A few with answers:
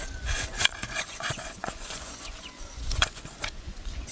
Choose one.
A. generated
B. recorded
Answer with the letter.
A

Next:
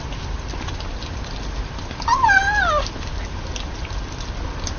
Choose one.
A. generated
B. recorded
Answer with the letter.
B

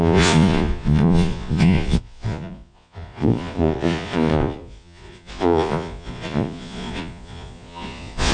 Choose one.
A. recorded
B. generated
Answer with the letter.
B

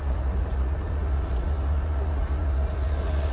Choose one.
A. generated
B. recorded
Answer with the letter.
A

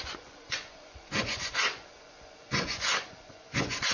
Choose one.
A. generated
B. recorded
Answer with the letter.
A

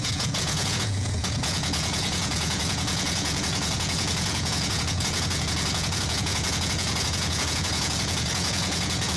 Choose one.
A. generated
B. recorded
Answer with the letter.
A